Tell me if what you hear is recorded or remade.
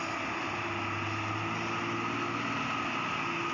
recorded